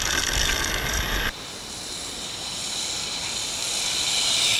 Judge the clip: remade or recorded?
recorded